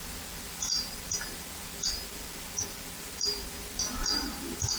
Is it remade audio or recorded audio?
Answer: recorded